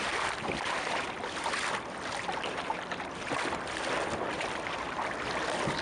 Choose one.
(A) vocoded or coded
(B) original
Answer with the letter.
A